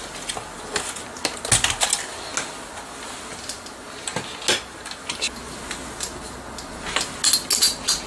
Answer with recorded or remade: recorded